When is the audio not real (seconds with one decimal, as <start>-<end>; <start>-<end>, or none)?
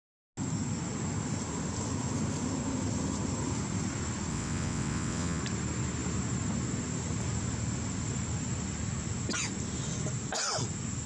4.3-5.4